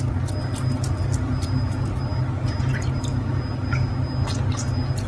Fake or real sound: real